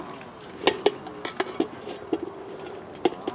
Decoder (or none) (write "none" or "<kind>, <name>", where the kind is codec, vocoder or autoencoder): none